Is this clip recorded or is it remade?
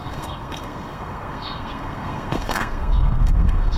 remade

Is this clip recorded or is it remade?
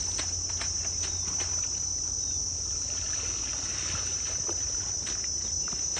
recorded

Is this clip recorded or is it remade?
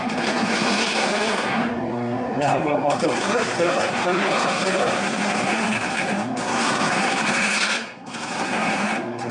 remade